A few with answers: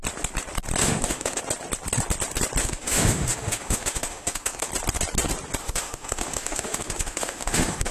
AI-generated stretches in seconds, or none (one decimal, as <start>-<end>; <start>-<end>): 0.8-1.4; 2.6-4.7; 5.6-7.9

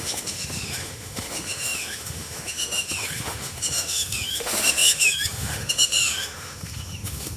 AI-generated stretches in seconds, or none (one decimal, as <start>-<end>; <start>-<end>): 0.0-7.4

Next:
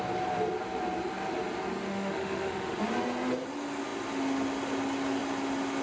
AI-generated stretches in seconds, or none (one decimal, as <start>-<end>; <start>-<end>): 1.9-2.8